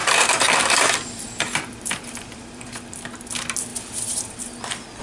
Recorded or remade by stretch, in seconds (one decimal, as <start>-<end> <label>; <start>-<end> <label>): 0.0-3.0 remade; 3.0-3.7 recorded; 3.7-5.0 remade